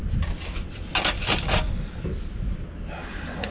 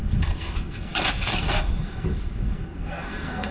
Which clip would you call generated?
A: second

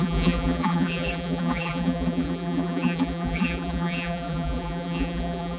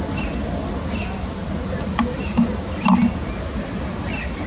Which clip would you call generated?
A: first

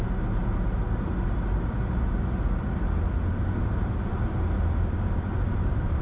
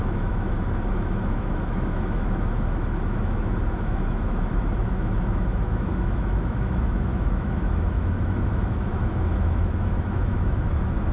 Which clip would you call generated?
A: second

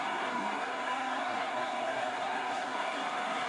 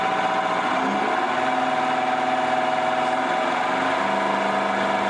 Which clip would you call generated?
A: first